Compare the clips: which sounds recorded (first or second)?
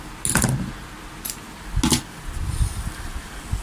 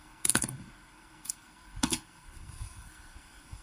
first